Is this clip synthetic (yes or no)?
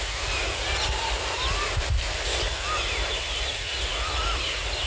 no